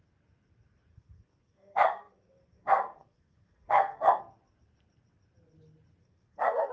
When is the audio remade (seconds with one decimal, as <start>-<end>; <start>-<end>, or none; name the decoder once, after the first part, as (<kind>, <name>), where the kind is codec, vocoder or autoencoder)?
0.9-4.2 (codec, SNAC); 6.0-6.7